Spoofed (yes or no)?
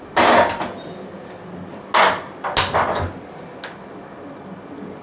no